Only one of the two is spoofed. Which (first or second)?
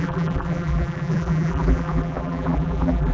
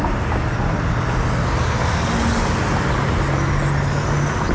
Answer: first